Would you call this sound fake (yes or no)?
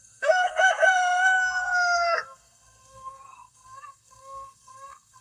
yes